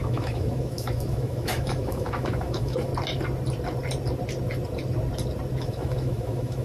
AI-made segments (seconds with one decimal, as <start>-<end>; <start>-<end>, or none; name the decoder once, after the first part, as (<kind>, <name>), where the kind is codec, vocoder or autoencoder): 0.0-2.9 (autoencoder, DAC-VAE); 5.6-6.6